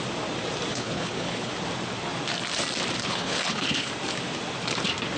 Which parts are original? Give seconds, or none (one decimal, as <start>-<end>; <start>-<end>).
0.0-0.7; 1.5-3.0; 3.9-5.2